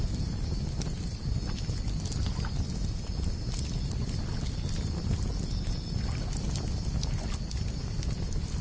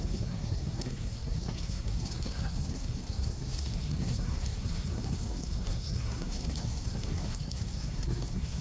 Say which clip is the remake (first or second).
second